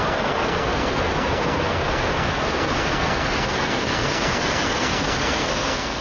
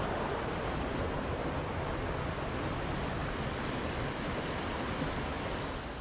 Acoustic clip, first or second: second